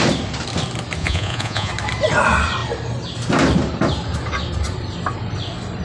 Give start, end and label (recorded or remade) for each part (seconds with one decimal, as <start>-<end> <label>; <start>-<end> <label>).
0.0-1.0 recorded; 1.0-1.7 remade; 1.7-5.8 recorded